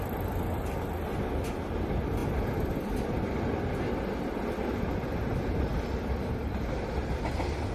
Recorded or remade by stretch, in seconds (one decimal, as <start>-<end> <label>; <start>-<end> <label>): 0.0-7.7 recorded